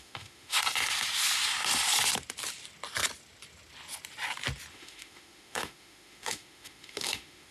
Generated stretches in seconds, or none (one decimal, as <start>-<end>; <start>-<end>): 0.0-0.6; 4.7-7.5